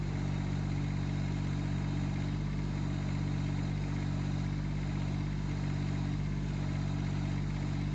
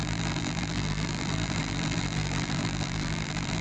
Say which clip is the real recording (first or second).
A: first